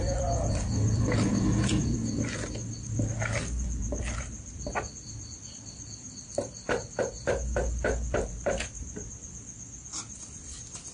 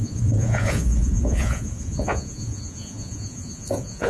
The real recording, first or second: first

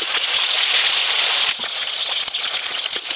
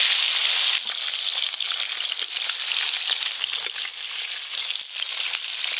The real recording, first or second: second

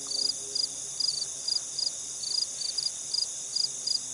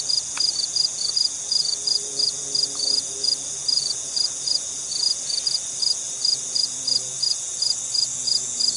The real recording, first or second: first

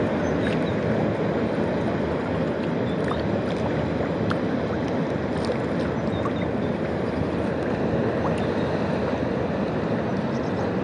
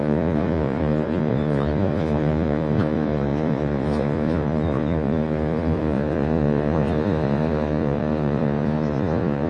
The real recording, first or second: first